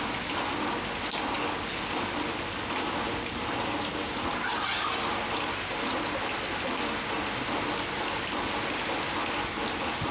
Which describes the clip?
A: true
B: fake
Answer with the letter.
A